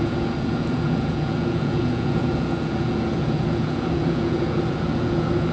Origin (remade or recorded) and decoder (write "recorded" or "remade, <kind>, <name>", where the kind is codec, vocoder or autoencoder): remade, vocoder, Vocos